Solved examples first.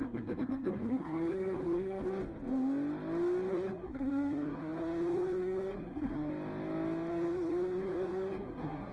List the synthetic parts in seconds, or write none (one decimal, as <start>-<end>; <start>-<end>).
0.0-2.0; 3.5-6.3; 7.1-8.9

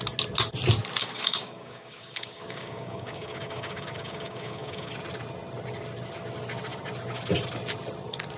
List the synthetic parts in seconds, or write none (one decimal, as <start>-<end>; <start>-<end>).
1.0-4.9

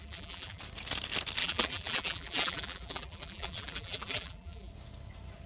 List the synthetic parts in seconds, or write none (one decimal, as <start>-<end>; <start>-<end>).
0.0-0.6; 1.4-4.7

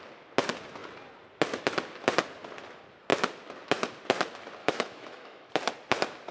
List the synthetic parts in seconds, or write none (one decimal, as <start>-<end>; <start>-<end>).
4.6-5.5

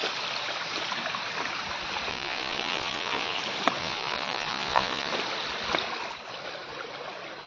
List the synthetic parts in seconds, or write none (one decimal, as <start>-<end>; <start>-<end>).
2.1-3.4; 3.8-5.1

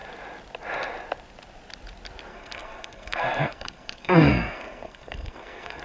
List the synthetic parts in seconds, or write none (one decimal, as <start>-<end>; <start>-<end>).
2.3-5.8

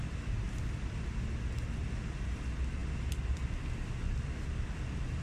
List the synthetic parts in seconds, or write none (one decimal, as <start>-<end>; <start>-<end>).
none

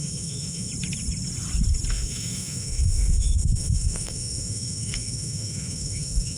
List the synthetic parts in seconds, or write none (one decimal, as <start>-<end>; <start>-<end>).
0.0-0.7; 1.9-6.4